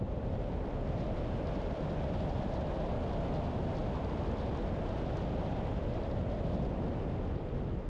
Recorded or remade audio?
recorded